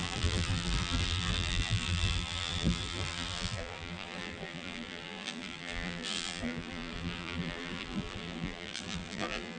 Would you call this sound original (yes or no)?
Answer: no